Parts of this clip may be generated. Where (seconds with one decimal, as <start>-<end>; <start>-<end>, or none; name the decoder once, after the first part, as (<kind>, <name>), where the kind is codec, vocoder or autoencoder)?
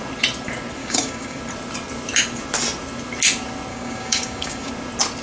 0.8-1.4 (codec, DAC); 3.7-4.7